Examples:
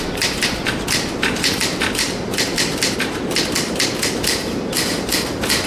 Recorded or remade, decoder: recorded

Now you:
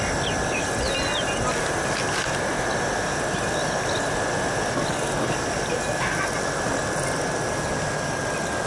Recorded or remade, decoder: recorded